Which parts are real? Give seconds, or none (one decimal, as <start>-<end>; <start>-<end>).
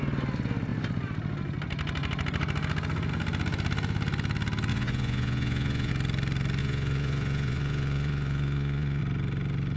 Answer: 0.0-4.7; 5.9-6.6; 9.0-9.8